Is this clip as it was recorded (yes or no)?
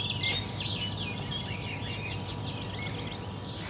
yes